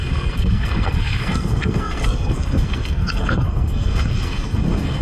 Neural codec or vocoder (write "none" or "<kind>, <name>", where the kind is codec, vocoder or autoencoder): codec, SNAC